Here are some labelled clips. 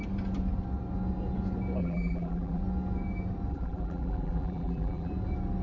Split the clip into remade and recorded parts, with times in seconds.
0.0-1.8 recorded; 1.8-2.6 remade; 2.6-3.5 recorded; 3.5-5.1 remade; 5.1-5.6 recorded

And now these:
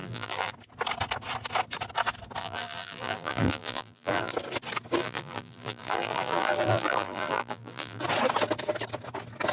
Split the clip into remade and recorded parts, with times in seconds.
0.0-0.5 remade; 0.5-2.4 recorded; 2.4-4.3 remade; 4.3-5.0 recorded; 5.0-8.0 remade; 8.0-9.5 recorded